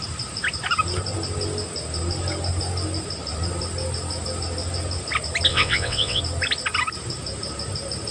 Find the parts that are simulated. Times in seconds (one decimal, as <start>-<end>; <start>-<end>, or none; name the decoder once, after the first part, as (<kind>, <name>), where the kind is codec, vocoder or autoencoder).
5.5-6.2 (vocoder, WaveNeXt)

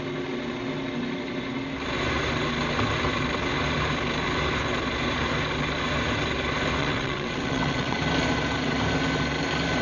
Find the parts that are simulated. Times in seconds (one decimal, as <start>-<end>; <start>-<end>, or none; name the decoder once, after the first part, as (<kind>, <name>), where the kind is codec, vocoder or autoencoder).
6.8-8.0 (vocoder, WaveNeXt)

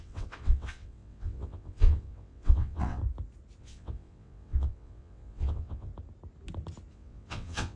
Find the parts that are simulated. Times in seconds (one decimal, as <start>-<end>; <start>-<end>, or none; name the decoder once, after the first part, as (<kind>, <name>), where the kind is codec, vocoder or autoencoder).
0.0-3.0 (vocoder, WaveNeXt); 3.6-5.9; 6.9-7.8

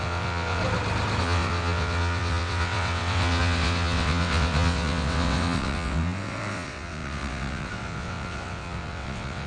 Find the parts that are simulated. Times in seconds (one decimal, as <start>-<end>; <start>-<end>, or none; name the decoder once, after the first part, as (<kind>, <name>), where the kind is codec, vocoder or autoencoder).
0.0-0.6 (vocoder, WaveNeXt); 1.2-9.5